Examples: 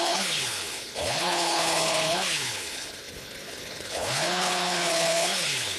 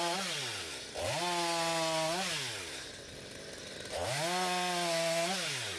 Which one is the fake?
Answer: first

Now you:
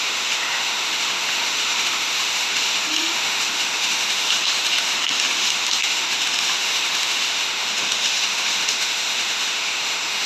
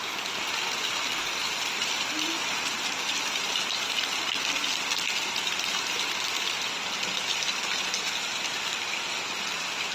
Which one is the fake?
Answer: first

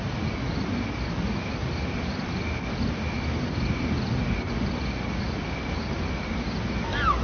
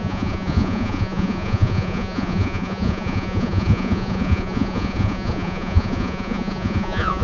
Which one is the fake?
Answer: second